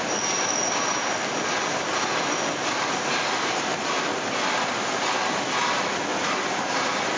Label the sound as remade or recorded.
recorded